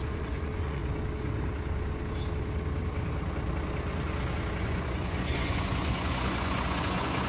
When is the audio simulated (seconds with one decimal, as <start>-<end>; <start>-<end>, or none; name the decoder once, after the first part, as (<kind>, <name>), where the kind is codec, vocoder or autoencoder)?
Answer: 0.0-0.8 (vocoder, Vocos); 4.6-7.3